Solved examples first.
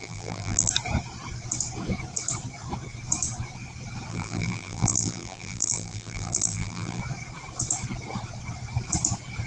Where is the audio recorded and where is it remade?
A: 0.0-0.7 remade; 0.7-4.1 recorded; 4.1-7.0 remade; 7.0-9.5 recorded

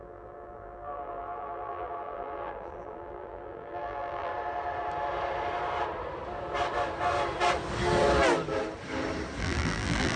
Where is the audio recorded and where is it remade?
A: 0.0-4.3 remade; 4.3-9.4 recorded; 9.4-10.2 remade

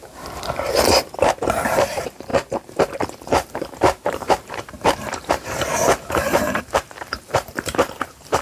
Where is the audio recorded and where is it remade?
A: 0.0-8.4 remade

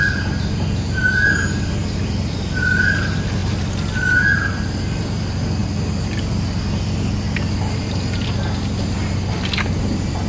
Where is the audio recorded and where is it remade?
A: 0.0-10.3 recorded

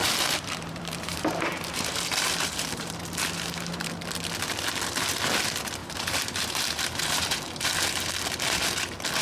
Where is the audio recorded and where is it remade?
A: 0.0-3.9 remade; 3.9-5.8 recorded; 5.8-8.1 remade; 8.1-9.2 recorded